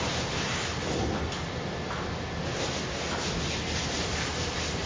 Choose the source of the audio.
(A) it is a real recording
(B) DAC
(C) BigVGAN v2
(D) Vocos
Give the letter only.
A